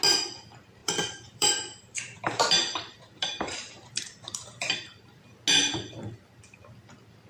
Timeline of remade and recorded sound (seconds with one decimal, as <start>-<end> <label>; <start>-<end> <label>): 0.0-0.8 recorded; 0.8-5.2 remade; 5.2-7.3 recorded